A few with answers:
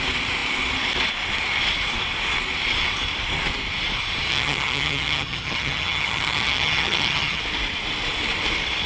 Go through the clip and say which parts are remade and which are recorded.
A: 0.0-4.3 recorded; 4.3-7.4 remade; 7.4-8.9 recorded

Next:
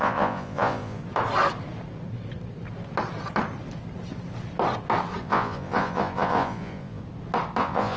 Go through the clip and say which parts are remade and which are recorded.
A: 0.0-1.0 remade; 1.0-5.2 recorded; 5.2-7.0 remade; 7.0-7.6 recorded; 7.6-8.0 remade

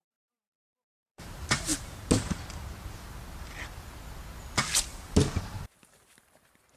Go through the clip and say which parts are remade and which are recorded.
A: 0.0-1.7 remade; 1.7-5.4 recorded; 5.4-6.8 remade

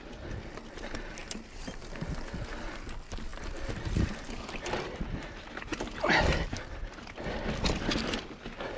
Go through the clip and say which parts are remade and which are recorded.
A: 0.0-8.8 recorded